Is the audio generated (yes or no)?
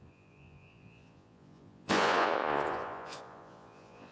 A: yes